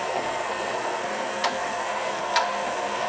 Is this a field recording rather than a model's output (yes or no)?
no